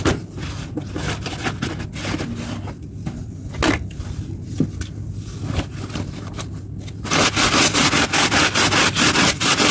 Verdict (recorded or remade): recorded